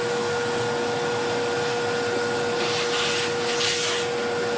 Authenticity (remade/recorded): recorded